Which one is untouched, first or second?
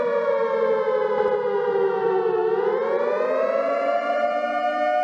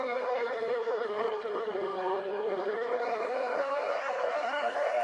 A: first